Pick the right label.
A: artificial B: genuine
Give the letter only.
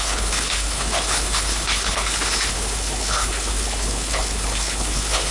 A